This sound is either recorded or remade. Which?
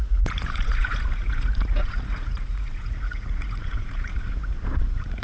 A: remade